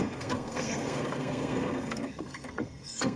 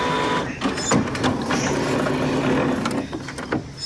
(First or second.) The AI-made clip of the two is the first